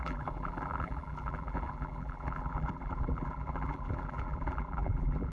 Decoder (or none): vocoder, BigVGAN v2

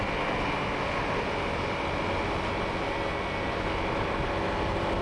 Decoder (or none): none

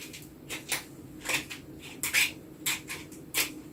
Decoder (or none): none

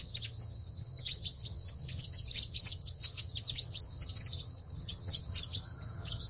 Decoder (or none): vocoder, HiFi-GAN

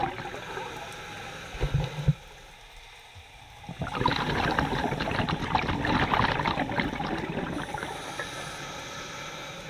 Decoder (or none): none